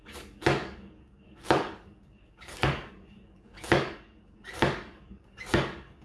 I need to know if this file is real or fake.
fake